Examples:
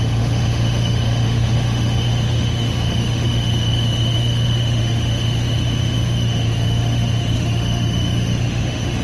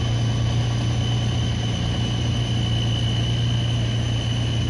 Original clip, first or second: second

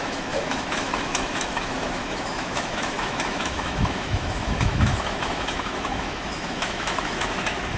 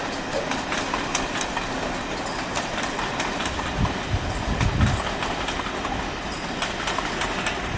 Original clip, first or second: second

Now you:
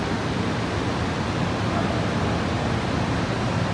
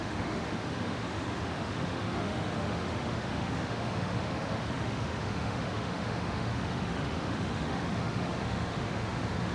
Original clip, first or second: first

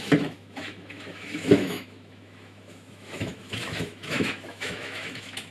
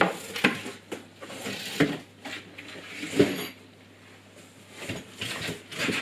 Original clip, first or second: second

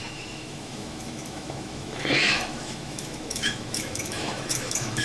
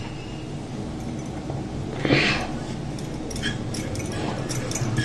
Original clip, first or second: second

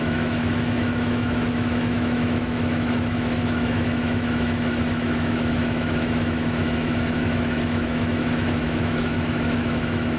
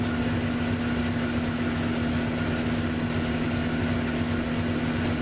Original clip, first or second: second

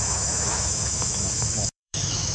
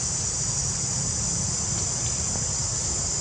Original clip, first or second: second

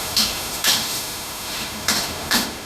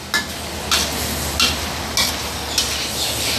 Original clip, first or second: second